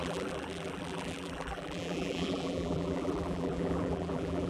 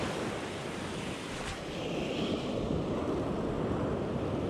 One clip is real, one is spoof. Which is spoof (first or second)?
first